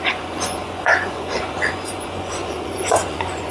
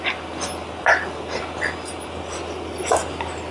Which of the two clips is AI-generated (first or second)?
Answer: first